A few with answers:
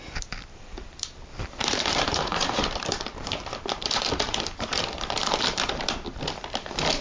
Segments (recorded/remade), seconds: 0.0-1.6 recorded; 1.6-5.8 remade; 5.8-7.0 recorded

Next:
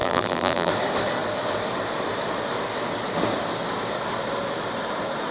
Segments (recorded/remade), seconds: 0.0-0.7 remade; 0.7-5.3 recorded

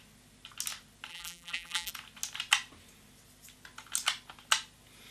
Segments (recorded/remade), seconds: 0.0-1.1 recorded; 1.1-1.9 remade; 1.9-5.1 recorded

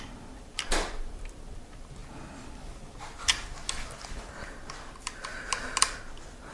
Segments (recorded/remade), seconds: 0.0-2.0 remade; 2.0-4.1 recorded; 4.1-5.3 remade; 5.3-5.8 recorded; 5.8-6.5 remade